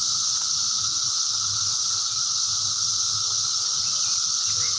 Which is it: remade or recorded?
recorded